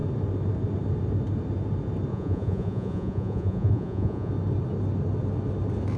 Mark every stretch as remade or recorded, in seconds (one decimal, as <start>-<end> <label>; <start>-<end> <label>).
0.0-2.1 recorded; 2.1-4.3 remade; 4.3-6.0 recorded